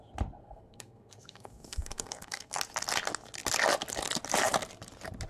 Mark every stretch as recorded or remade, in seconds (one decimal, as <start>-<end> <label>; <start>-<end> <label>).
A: 0.0-0.4 recorded; 0.4-2.6 remade; 2.6-5.3 recorded